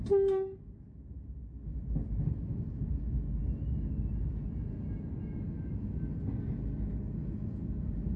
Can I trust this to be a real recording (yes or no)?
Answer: yes